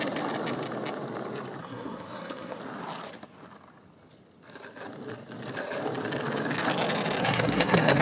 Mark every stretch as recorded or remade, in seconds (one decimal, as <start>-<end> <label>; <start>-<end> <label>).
0.0-1.6 recorded; 1.6-2.6 remade; 2.6-7.2 recorded; 7.2-8.0 remade